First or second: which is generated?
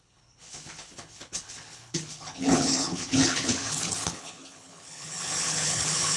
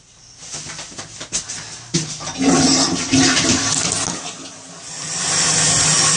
first